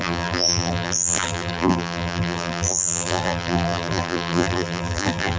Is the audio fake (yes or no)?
yes